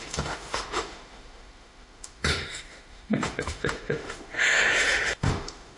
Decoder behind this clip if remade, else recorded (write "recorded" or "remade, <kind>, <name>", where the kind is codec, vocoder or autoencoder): remade, autoencoder, DAC-VAE